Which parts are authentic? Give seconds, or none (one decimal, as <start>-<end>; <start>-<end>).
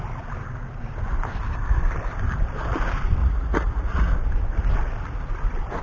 0.0-3.2; 4.1-5.8